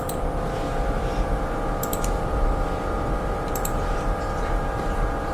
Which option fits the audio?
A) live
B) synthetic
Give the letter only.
B